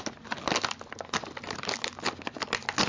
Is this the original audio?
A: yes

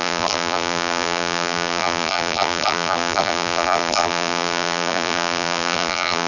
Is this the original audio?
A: no